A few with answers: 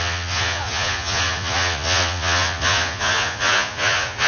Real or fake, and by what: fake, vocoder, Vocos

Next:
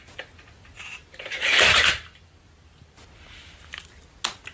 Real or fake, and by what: real